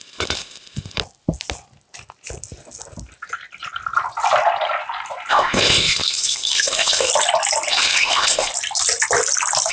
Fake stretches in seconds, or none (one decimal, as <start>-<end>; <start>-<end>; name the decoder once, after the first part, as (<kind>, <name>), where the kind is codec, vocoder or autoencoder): 0.0-1.0 (codec, ZipCodec); 5.3-7.1; 7.7-8.5